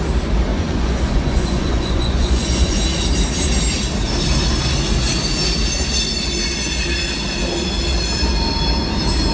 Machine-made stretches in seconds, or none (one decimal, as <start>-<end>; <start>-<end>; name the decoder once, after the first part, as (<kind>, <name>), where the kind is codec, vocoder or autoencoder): 0.5-2.8 (vocoder, Vocos)